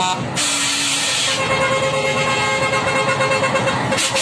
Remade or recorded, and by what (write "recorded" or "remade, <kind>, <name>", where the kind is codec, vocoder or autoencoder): recorded